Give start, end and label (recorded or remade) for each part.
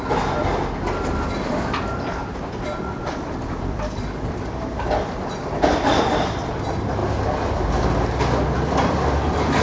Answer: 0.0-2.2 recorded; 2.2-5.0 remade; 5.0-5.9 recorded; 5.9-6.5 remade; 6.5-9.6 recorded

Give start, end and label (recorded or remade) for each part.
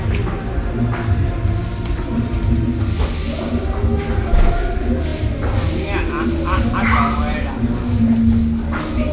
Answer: 0.0-9.1 recorded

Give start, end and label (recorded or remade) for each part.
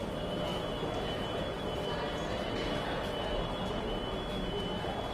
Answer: 0.0-5.1 recorded